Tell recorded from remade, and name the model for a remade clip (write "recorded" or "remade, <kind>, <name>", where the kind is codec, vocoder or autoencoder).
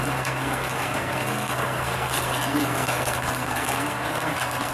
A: remade, codec, SNAC